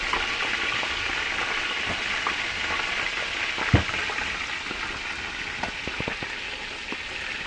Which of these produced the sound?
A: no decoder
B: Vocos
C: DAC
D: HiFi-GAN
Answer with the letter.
A